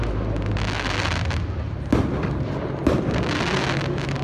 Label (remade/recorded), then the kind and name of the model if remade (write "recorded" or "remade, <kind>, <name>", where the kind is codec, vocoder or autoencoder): recorded